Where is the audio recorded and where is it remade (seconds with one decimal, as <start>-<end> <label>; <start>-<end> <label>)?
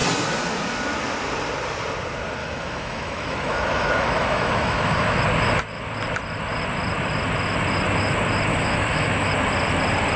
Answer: 0.0-2.4 recorded; 2.4-5.2 remade; 5.2-8.5 recorded; 8.5-9.3 remade; 9.3-10.2 recorded